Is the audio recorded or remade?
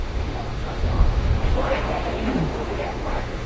remade